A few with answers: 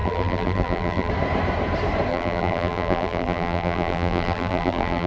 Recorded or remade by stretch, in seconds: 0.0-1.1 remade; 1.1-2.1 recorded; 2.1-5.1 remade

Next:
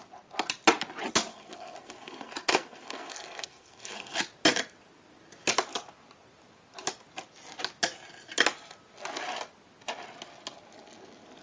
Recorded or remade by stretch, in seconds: 0.0-1.3 recorded; 1.3-4.2 remade; 4.2-11.4 recorded

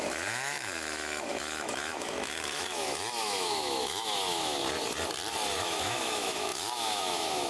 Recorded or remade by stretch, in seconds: 0.0-4.6 remade; 4.6-5.6 recorded; 5.6-7.5 remade

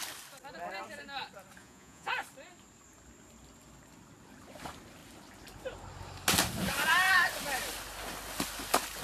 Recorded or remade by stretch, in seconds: 0.0-1.6 recorded; 1.6-2.1 remade; 2.1-9.0 recorded

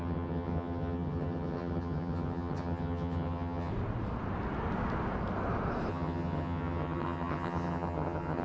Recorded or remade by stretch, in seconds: 0.0-3.7 remade; 3.7-5.9 recorded; 5.9-8.4 remade

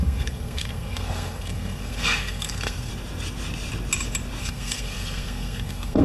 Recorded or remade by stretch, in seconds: 0.0-2.9 remade; 2.9-4.4 recorded; 4.4-6.0 remade

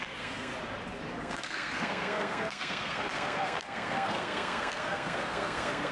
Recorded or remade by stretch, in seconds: 0.0-0.5 remade; 0.5-1.2 recorded; 1.2-5.9 remade

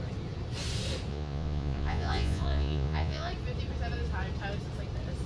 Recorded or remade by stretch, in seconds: 0.0-1.1 recorded; 1.1-3.3 remade; 3.3-5.3 recorded